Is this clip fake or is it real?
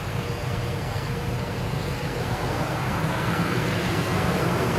fake